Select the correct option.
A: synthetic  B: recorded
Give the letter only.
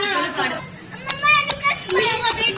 B